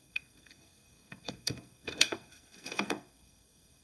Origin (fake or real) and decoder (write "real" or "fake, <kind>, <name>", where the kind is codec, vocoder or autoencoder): fake, codec, SNAC